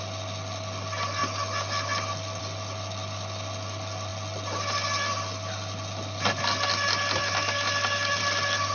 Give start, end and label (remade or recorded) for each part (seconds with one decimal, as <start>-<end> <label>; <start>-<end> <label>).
0.0-8.7 recorded